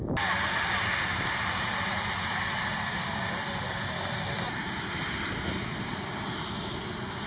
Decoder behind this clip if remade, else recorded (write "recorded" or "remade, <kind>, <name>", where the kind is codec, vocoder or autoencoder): recorded